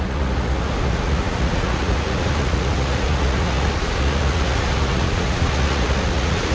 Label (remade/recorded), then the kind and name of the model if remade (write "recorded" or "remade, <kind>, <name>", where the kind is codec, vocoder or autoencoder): remade, vocoder, Vocos